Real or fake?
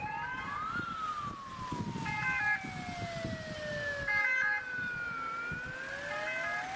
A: real